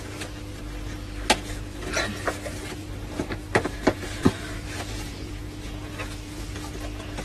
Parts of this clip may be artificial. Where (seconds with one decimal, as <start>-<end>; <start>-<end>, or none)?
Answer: 2.8-5.3